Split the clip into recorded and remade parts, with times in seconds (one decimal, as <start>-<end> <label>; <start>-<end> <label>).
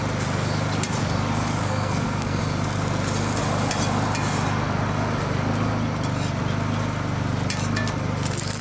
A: 0.0-1.6 recorded; 1.6-2.4 remade; 2.4-8.6 recorded